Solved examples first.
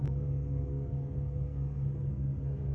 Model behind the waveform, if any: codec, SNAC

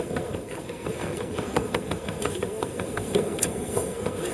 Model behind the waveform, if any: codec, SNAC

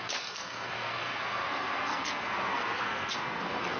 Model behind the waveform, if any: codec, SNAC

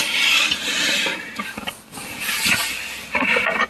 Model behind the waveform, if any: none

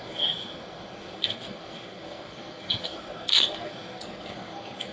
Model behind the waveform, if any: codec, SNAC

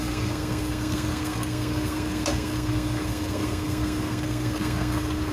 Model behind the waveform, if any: codec, SNAC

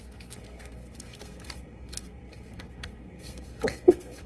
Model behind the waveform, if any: codec, SNAC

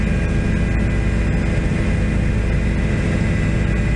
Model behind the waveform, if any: none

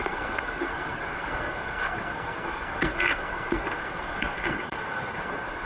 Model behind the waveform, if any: codec, SNAC